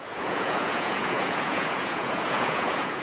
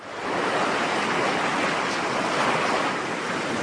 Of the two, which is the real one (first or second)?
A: second